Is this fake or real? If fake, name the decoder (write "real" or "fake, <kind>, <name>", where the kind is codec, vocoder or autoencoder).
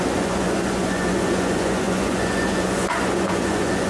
fake, vocoder, Vocos